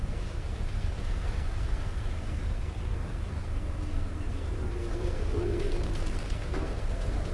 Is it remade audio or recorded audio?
remade